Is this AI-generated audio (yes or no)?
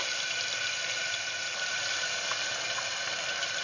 no